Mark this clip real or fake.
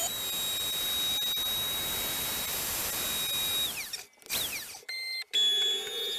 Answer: real